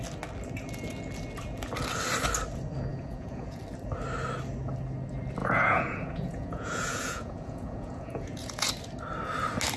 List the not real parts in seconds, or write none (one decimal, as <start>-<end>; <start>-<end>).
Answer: 2.9-3.6; 5.4-8.7